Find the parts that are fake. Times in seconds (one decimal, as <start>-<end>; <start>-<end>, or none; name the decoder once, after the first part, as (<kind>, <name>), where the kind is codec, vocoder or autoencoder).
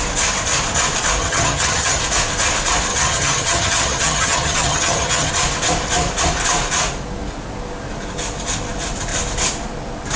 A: 1.2-2.0 (vocoder, HiFi-GAN); 2.9-5.3